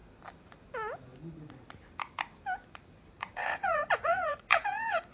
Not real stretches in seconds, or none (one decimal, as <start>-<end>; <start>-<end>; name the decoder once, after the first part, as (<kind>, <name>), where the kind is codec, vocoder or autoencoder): 3.1-5.1 (vocoder, Vocos)